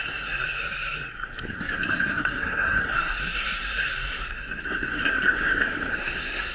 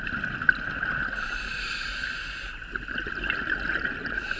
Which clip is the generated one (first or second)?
first